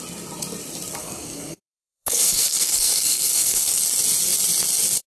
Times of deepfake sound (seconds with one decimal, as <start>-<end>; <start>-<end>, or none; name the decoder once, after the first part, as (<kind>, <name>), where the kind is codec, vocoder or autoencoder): 1.0-3.8 (codec, SNAC)